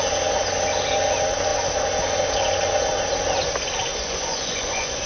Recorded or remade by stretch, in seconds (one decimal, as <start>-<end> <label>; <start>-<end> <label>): 0.0-3.9 recorded; 3.9-5.1 remade